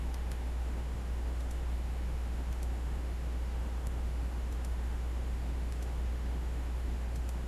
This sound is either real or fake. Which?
fake